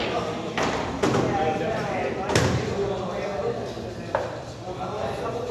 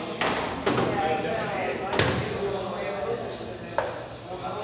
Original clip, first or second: second